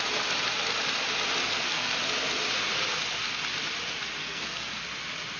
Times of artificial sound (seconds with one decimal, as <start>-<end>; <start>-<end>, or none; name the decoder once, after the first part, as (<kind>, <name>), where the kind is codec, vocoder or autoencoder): 1.4-1.9 (codec, SNAC); 4.2-4.8